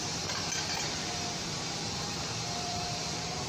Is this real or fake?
fake